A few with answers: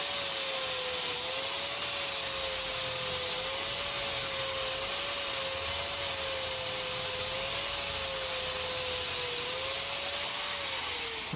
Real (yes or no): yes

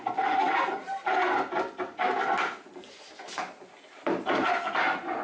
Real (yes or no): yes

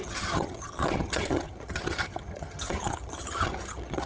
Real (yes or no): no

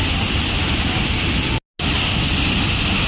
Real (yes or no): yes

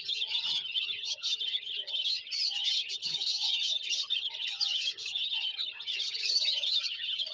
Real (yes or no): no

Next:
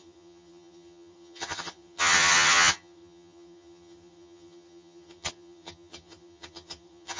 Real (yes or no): no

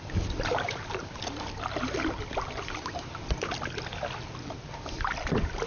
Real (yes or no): yes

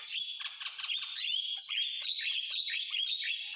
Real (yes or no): yes